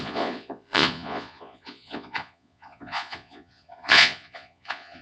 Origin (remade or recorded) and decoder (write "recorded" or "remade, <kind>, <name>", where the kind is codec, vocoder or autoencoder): remade, vocoder, Vocos